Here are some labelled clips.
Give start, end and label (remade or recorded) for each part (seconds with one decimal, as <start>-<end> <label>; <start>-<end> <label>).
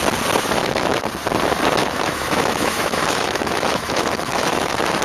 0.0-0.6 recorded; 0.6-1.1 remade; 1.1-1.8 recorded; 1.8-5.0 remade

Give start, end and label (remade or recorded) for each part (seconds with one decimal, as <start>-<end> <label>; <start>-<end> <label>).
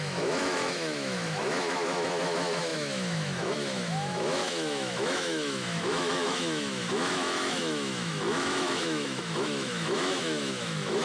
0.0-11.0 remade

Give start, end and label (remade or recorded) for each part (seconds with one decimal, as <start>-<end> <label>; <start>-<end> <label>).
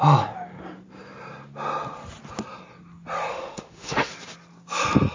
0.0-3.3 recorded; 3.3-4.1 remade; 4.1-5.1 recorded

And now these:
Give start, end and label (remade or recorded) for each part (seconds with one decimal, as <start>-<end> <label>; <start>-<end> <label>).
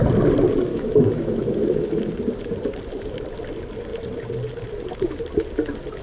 0.0-0.7 recorded; 0.7-2.1 remade; 2.1-6.0 recorded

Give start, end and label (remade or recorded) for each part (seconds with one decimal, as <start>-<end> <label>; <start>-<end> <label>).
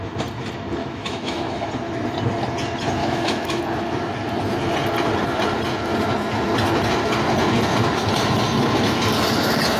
0.0-0.8 recorded; 0.8-1.7 remade; 1.7-3.0 recorded; 3.0-3.6 remade; 3.6-9.8 recorded